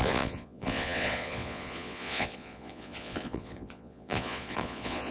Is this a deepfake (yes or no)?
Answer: yes